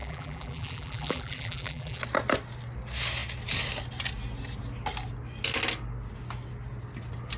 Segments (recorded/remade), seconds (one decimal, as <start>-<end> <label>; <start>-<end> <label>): 0.0-2.0 remade; 2.0-7.4 recorded